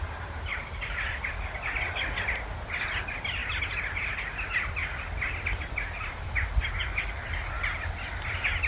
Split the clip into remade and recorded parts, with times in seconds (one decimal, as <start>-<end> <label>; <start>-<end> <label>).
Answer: 0.0-8.7 recorded